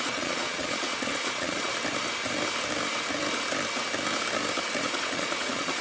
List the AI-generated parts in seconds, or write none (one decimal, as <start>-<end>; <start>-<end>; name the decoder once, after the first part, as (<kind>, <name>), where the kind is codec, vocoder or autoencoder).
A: 0.0-1.7 (vocoder, Vocos); 4.8-5.8

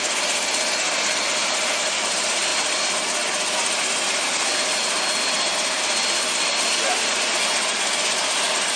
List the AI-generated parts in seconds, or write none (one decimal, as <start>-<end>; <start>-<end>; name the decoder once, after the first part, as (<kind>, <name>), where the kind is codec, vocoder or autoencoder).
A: none

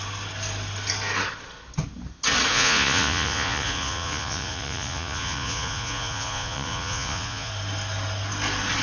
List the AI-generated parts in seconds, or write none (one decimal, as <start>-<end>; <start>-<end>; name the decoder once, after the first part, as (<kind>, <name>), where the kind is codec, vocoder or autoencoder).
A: 2.5-7.5 (vocoder, Vocos)

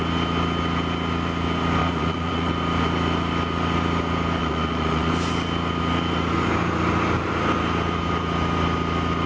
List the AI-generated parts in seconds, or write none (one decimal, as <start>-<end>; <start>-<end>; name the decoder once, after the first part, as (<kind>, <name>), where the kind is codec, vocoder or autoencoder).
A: 1.8-2.5 (vocoder, Vocos); 4.4-5.1